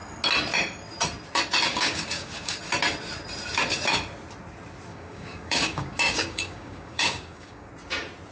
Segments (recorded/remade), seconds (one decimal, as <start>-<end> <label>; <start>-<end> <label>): 0.0-1.7 recorded; 1.7-2.6 remade; 2.6-4.9 recorded; 4.9-7.7 remade; 7.7-8.3 recorded